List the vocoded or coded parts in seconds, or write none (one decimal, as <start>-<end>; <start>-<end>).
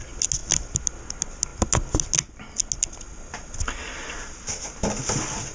none